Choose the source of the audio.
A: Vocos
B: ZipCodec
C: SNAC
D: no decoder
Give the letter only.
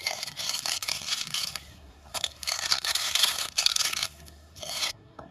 C